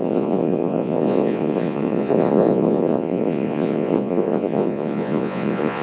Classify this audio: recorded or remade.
remade